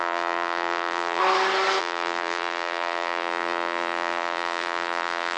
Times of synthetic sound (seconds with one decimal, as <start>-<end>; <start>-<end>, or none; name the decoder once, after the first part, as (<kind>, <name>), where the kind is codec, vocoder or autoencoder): 0.0-1.2 (vocoder, BigVGAN v2); 1.8-5.4